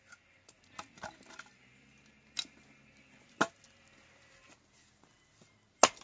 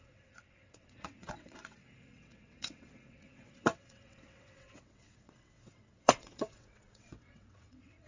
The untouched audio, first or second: first